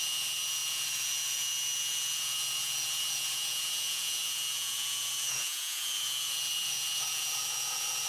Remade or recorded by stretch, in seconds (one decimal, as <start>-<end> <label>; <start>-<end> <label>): 0.0-8.1 remade